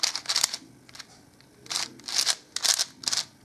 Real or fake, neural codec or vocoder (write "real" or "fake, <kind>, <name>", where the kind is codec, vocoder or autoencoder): real